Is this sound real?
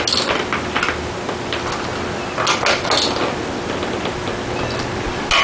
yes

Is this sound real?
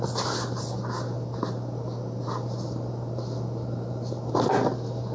yes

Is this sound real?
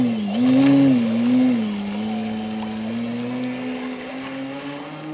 yes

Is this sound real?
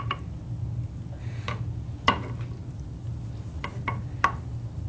yes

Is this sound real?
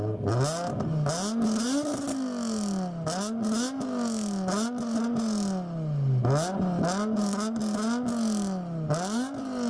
yes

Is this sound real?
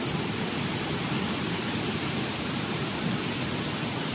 yes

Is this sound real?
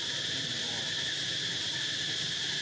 yes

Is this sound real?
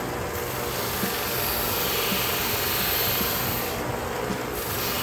yes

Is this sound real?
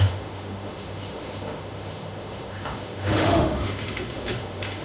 no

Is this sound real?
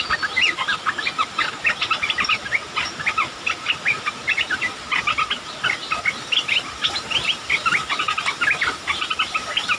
yes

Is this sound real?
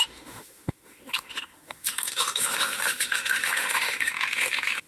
no